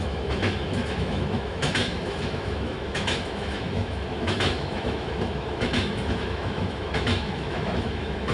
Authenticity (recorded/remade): remade